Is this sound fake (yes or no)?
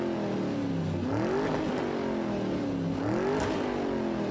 no